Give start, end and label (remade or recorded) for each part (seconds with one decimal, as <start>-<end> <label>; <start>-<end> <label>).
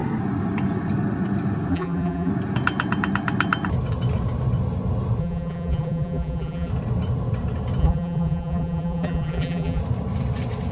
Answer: 0.0-1.7 recorded; 1.7-2.3 remade; 2.3-5.2 recorded; 5.2-6.7 remade; 6.7-7.8 recorded; 7.8-9.8 remade; 9.8-10.7 recorded